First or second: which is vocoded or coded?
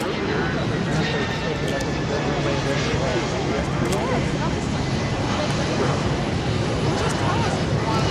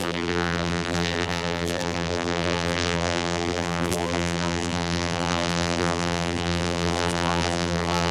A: second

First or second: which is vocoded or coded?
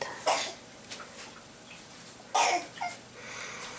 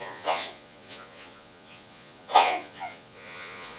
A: second